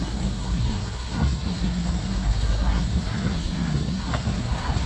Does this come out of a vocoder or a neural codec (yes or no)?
yes